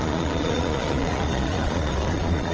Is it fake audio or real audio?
fake